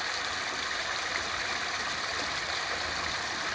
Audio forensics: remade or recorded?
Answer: recorded